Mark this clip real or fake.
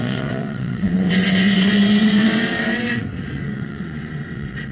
fake